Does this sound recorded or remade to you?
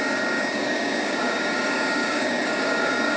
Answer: remade